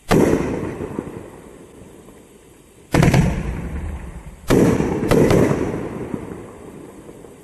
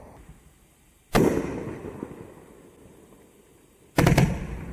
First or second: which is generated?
first